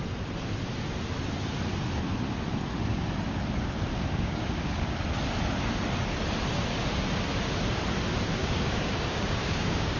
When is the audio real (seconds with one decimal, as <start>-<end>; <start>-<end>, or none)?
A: 0.0-3.9; 4.8-8.4